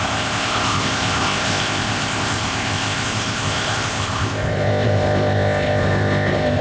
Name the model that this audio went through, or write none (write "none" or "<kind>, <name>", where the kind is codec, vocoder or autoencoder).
codec, ZipCodec